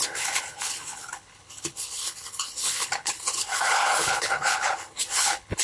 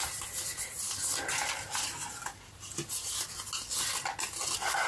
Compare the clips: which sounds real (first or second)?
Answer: second